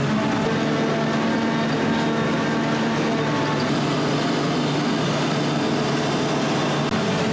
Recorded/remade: recorded